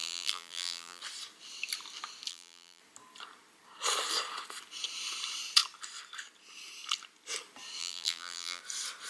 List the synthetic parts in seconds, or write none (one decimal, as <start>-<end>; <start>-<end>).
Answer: 0.0-1.0; 2.3-2.8; 7.8-8.6